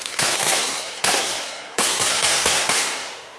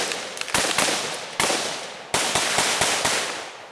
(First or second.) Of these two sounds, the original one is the second